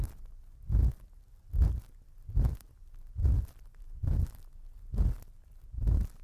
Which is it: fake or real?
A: real